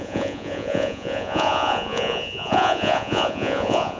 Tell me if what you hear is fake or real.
fake